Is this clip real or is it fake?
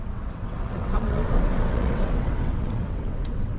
fake